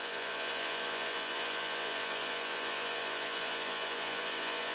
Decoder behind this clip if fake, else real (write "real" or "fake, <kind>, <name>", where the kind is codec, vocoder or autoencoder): fake, vocoder, Vocos